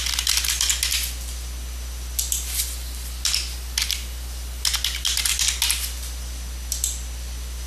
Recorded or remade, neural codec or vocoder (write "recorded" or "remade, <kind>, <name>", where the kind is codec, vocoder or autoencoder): recorded